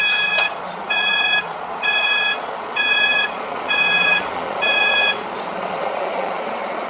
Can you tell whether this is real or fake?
fake